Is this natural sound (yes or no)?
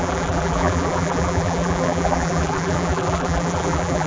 no